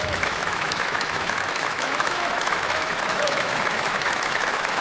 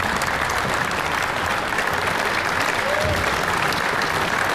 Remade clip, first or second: first